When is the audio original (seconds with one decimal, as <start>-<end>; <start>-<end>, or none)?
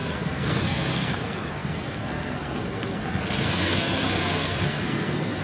none